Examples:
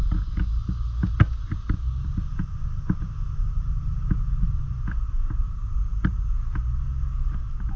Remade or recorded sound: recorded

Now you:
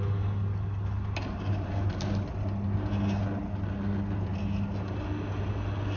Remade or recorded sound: recorded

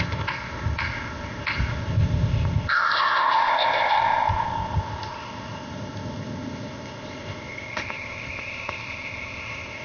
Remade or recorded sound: remade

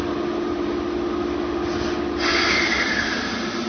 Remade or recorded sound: recorded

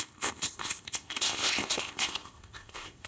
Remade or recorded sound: remade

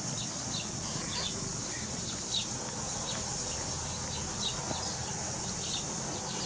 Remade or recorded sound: recorded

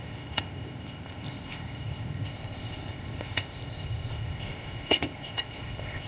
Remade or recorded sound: remade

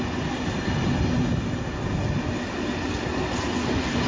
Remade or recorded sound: recorded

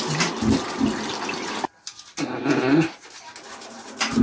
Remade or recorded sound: recorded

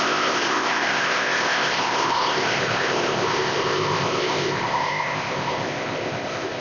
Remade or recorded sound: remade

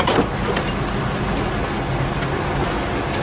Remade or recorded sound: recorded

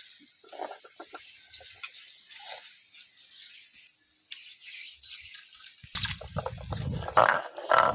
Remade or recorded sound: recorded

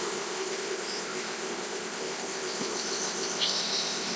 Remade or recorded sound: remade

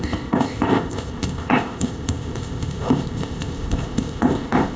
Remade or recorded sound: remade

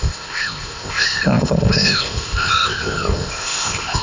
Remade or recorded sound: remade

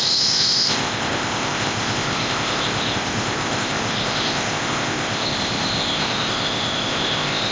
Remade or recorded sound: remade